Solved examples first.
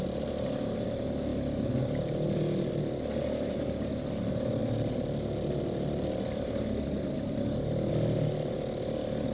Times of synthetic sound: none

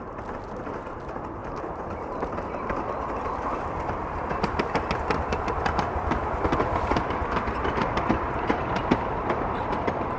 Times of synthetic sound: 1.4-2.9 (vocoder, BigVGAN v2); 7.8-8.7

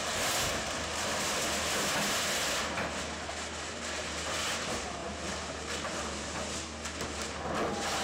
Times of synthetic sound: none

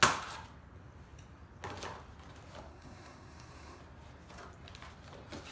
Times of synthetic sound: 2.7-3.8 (codec, SNAC)